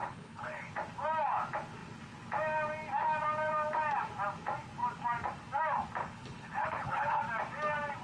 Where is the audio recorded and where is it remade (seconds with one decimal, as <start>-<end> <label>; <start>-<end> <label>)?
0.0-0.7 remade; 0.7-6.0 recorded; 6.0-7.2 remade; 7.2-8.0 recorded